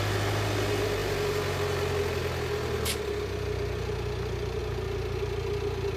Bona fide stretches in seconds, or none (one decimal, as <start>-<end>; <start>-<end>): 0.0-6.0